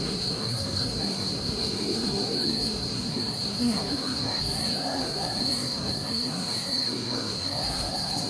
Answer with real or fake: fake